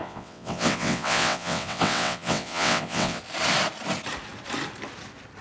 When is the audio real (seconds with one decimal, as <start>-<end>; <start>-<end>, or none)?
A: 3.2-5.4